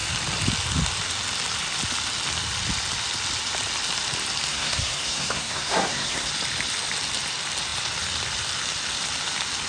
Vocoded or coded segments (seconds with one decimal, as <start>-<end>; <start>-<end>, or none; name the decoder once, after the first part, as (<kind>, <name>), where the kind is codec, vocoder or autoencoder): 4.5-6.3 (codec, SNAC)